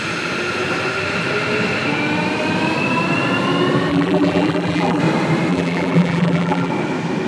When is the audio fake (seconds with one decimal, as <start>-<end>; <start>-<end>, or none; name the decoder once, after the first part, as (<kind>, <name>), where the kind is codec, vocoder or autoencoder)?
3.9-5.0 (vocoder, BigVGAN v2); 5.5-6.7